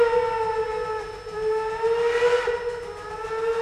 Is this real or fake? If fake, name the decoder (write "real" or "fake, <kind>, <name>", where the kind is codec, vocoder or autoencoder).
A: real